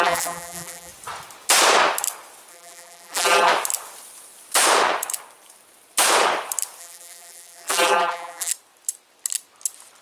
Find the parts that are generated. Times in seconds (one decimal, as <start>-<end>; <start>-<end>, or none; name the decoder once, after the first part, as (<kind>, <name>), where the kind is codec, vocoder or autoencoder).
0.0-0.9 (vocoder, BigVGAN v2); 2.5-3.5; 6.8-8.5